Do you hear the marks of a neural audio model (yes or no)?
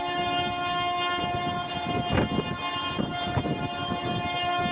no